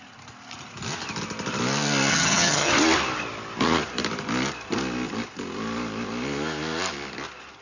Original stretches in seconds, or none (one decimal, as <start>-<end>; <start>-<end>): 0.0-2.1; 2.7-7.6